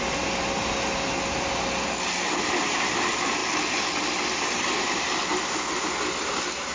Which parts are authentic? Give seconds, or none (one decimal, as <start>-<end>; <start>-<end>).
0.0-6.7